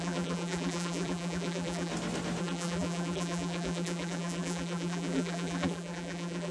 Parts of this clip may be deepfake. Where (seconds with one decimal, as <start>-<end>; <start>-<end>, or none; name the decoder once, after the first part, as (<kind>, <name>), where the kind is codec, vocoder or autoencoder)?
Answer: 0.0-1.9 (vocoder, BigVGAN v2); 2.4-6.5